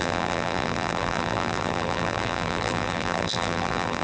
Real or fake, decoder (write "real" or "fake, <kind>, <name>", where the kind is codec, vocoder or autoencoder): fake, vocoder, BigVGAN v2